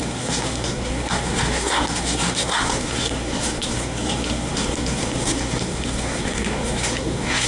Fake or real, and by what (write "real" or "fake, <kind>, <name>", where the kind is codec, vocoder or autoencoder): fake, codec, SNAC